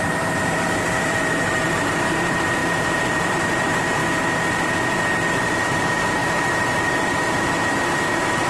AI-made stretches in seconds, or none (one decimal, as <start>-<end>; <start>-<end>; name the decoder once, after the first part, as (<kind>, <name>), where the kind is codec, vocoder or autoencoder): 0.0-4.0 (vocoder, BigVGAN v2); 5.3-8.5